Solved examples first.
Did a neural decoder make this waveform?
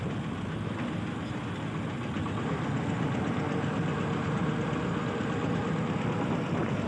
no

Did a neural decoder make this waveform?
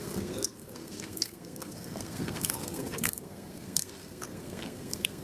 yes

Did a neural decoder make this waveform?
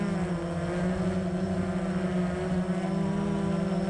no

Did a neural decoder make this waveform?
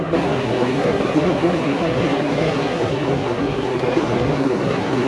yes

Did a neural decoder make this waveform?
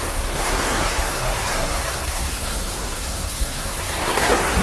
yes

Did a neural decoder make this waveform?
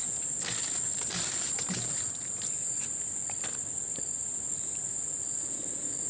no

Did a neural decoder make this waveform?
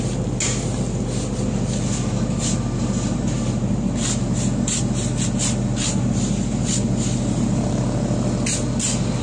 no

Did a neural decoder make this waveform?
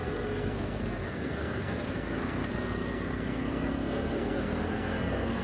yes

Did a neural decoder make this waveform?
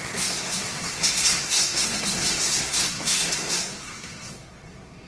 yes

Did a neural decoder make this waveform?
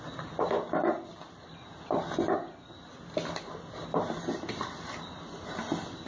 no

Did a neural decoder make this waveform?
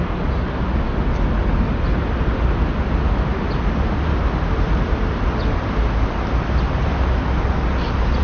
no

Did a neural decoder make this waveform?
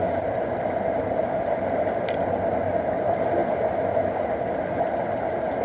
no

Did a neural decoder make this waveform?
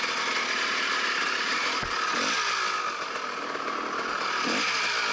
no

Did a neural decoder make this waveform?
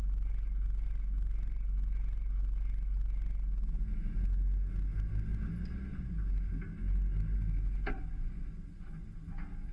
no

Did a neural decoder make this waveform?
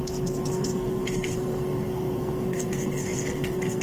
yes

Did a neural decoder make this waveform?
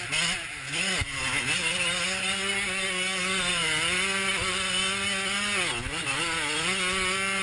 no